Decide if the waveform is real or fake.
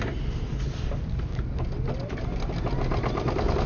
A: real